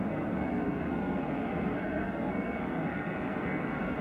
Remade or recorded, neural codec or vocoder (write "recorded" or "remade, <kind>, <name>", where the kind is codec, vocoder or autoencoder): remade, codec, SNAC